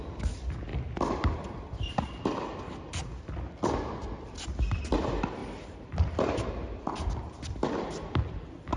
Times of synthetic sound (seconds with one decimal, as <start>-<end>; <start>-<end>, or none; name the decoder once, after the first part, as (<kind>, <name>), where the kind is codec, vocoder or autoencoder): 5.4-6.5 (vocoder, BigVGAN v2)